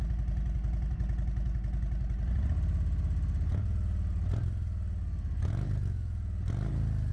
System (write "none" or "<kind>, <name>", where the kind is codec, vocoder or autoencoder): none